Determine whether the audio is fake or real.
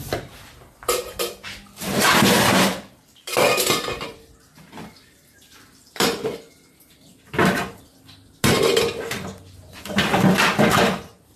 real